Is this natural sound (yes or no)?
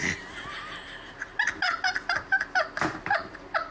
yes